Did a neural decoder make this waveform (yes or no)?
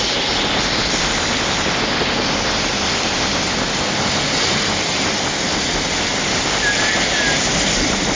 no